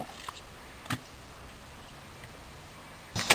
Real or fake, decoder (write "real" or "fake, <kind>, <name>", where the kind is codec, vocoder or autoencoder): real